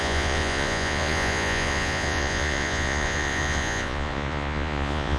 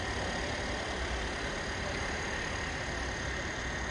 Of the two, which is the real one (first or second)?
second